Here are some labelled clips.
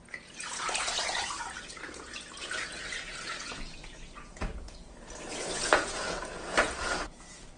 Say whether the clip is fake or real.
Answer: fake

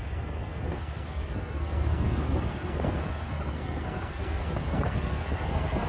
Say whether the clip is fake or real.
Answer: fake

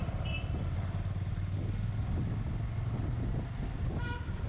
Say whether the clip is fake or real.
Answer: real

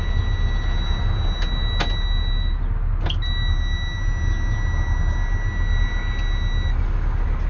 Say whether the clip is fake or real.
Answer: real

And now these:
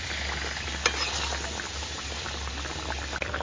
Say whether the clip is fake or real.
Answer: real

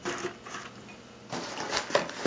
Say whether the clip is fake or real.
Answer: real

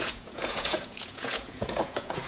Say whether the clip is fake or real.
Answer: fake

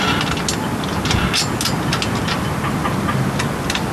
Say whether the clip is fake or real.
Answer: real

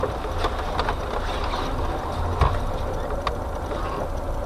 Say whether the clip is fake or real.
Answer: real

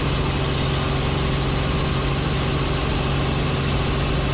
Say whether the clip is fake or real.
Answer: real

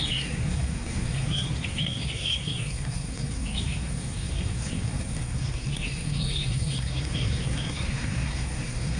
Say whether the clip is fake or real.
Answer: fake